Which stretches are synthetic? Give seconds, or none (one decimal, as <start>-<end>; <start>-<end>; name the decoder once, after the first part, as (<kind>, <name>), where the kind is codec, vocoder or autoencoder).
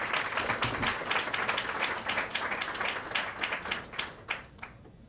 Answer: none